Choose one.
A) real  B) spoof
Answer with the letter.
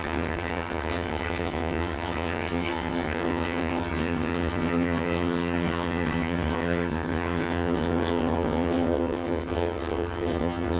B